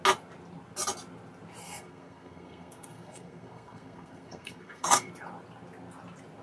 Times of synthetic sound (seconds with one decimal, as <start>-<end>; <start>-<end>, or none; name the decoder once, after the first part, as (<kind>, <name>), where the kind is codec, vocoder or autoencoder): 1.6-5.1 (codec, SNAC)